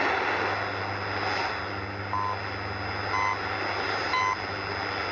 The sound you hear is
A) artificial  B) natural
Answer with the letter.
B